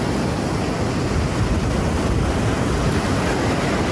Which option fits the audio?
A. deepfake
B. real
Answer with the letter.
B